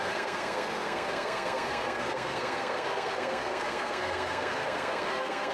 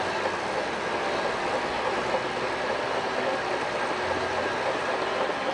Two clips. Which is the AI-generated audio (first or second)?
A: first